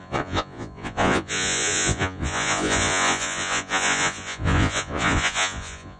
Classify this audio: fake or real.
fake